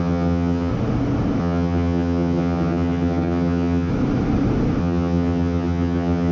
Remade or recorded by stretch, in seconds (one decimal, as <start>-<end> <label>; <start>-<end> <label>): 0.0-0.7 remade; 0.7-1.4 recorded; 1.4-3.9 remade; 3.9-4.8 recorded; 4.8-6.3 remade